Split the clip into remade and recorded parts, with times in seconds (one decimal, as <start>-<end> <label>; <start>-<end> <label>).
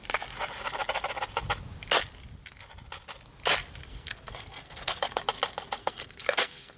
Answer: 0.0-3.8 recorded; 3.8-5.2 remade; 5.2-5.8 recorded; 5.8-6.8 remade